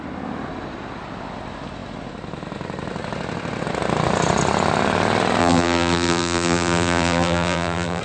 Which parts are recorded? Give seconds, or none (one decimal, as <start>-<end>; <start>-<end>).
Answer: 0.0-5.4